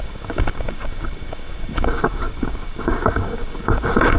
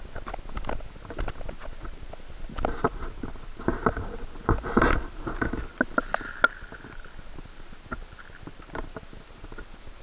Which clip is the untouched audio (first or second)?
second